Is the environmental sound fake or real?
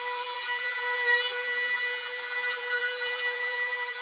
fake